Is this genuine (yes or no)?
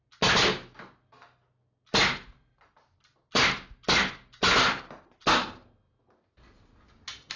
yes